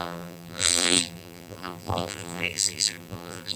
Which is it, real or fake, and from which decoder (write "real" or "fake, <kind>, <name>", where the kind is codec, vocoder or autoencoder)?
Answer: fake, vocoder, BigVGAN v2